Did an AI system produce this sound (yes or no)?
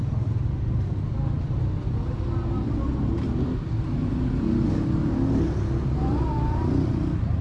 no